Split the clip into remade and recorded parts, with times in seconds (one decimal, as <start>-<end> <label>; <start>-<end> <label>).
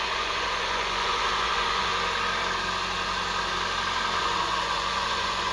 0.0-1.9 remade; 1.9-4.2 recorded; 4.2-5.5 remade